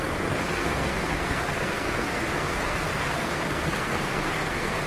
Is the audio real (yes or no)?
no